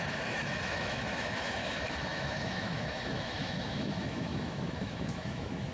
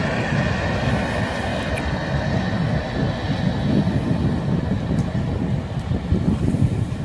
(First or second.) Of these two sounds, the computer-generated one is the first